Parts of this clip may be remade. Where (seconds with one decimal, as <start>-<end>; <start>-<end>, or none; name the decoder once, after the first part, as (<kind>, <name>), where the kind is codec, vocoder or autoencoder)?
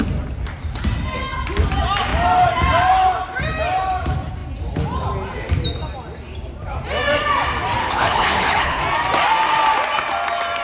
7.8-8.8 (codec, HILCodec)